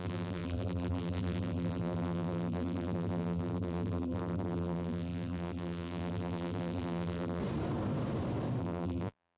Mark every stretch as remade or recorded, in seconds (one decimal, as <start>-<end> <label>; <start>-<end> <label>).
0.0-7.4 remade; 7.4-8.6 recorded; 8.6-9.4 remade